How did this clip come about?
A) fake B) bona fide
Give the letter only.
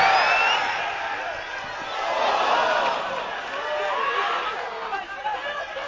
B